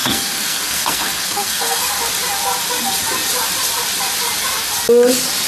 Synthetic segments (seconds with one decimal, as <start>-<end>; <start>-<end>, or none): 0.0-1.9